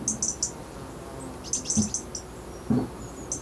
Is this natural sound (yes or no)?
yes